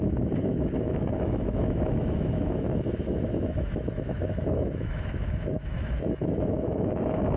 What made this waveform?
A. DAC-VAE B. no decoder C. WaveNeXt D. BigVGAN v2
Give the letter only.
A